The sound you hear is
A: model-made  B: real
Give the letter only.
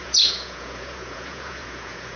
A